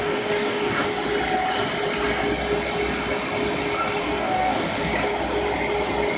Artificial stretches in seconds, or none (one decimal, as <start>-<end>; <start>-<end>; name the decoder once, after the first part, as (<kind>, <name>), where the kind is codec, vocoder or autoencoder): 0.0-0.9 (codec, DAC); 4.0-4.9